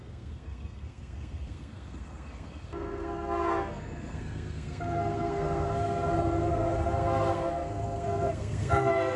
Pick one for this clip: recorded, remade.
remade